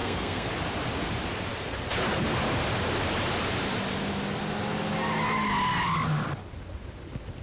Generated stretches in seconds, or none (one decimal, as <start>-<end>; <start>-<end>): 0.0-0.5